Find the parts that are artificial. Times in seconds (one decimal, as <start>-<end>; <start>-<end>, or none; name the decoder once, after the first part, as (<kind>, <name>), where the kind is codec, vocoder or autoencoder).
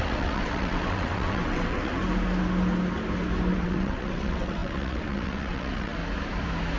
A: 0.0-2.0 (vocoder, WaveNeXt); 3.5-6.0